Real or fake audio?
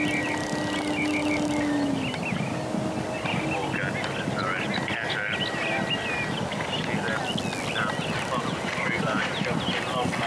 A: real